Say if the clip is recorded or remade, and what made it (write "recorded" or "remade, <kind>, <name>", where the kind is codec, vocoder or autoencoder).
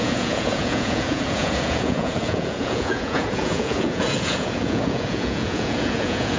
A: remade, vocoder, Vocos